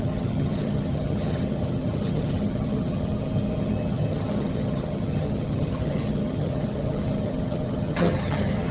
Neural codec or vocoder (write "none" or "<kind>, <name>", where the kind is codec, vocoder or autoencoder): vocoder, HiFi-GAN